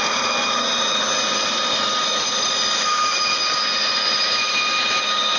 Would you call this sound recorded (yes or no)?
yes